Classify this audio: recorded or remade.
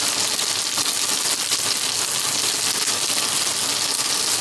recorded